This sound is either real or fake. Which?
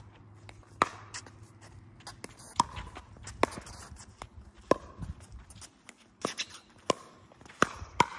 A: real